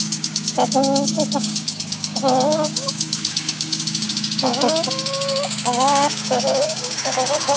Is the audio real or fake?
fake